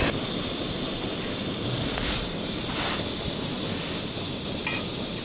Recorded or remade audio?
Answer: recorded